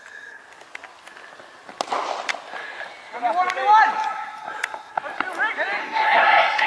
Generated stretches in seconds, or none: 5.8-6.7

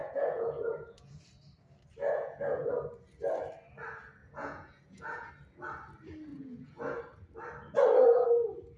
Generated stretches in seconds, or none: 0.0-1.1; 2.0-2.7; 4.2-5.3; 6.3-7.0

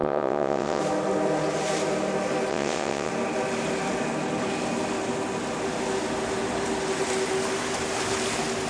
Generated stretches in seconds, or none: 0.0-0.8; 2.5-3.1

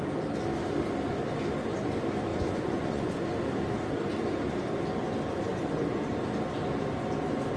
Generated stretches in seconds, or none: 2.3-3.1

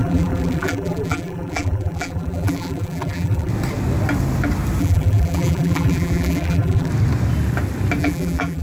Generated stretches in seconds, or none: 0.0-3.5; 4.8-6.9; 8.0-8.6

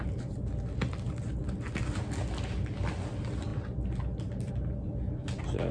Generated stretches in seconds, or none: none